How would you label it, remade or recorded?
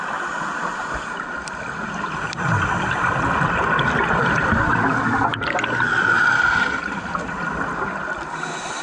recorded